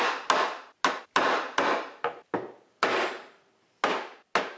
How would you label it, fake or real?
real